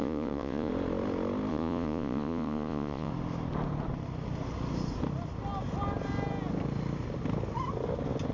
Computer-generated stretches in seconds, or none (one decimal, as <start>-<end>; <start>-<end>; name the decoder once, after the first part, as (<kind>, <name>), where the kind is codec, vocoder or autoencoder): 0.0-0.7 (vocoder, Vocos); 1.5-3.1